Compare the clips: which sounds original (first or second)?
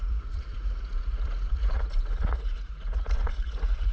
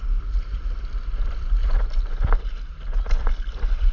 second